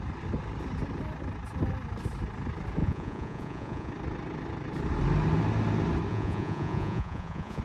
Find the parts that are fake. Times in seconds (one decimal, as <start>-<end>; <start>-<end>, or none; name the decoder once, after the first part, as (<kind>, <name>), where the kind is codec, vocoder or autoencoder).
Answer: 2.8-3.9 (vocoder, Vocos); 6.1-7.6